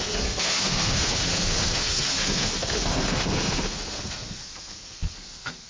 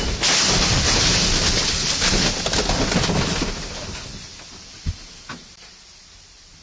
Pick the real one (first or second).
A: second